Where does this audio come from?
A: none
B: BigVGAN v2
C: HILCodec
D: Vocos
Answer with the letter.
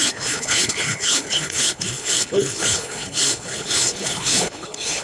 C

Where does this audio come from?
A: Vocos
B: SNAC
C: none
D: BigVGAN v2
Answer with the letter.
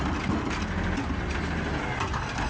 C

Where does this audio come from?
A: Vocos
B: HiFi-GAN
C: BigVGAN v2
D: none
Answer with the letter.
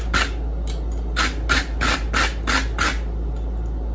D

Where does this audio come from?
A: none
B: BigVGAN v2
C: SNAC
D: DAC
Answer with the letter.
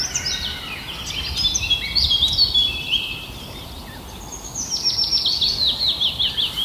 A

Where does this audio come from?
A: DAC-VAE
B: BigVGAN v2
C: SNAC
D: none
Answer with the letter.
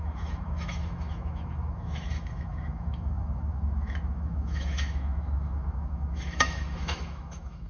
A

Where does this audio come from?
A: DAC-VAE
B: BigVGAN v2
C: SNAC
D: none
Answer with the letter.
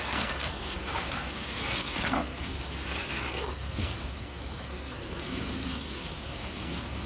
C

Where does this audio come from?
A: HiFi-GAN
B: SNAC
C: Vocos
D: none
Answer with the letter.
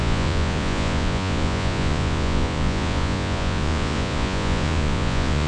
C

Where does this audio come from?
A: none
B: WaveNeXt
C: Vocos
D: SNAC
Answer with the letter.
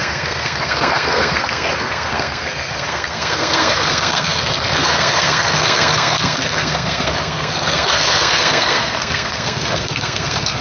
D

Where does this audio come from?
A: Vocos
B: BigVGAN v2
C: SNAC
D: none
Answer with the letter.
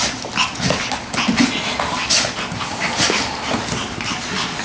D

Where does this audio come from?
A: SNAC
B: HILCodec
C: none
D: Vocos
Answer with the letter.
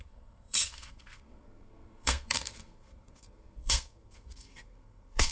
A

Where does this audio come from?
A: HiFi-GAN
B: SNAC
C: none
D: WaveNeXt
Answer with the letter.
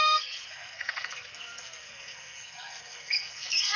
B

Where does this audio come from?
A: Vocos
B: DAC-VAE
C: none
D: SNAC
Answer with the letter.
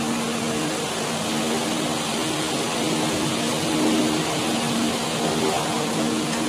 C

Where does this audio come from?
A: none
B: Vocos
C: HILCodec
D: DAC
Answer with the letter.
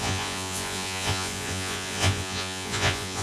B